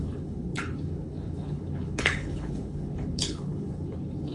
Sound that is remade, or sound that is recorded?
remade